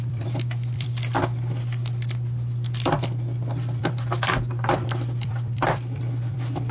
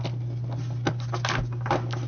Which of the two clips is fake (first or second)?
first